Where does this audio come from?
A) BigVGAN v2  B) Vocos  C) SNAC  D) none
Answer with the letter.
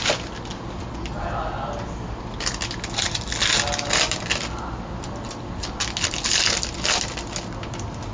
D